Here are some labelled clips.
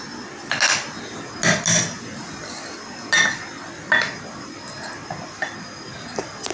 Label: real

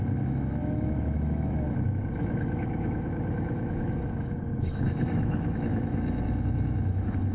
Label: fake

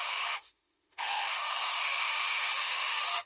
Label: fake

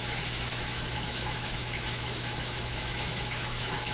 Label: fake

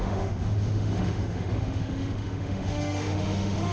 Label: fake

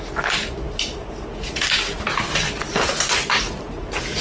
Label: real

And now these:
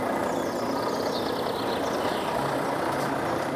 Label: real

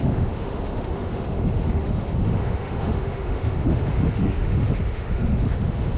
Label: fake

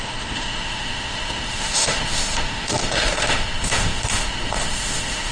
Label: fake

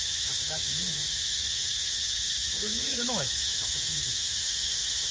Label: fake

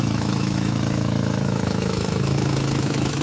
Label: fake